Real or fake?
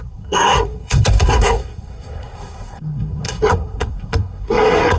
fake